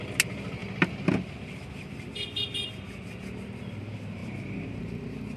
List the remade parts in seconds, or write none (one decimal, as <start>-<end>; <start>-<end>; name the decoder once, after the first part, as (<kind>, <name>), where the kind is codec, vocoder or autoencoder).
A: none